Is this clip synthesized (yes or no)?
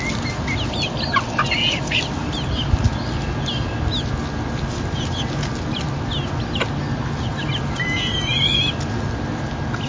no